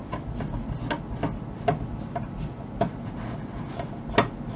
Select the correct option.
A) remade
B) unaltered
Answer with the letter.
B